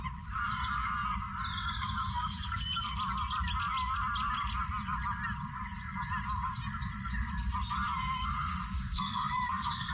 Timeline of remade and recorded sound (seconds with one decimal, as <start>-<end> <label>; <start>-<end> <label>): 0.0-2.0 recorded; 2.0-2.6 remade; 2.6-8.0 recorded; 8.0-9.9 remade